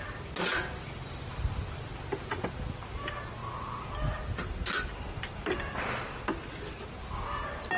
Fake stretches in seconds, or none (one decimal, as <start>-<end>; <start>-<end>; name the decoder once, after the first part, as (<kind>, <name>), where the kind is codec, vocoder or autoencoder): none